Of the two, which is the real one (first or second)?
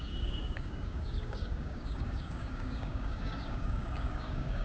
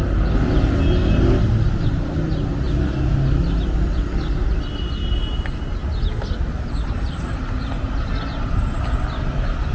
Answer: second